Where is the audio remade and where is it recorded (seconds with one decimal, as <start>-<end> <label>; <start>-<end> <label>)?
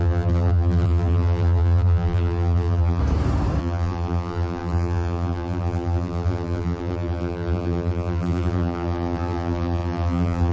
0.0-3.0 remade; 3.0-3.6 recorded; 3.6-10.5 remade